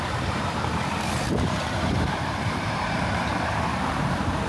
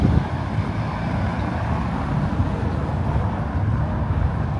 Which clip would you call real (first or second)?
second